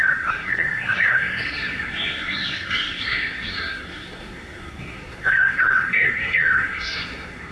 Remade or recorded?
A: remade